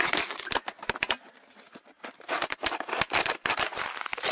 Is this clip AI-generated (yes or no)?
no